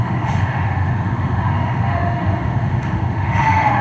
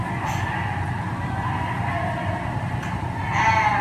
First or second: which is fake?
first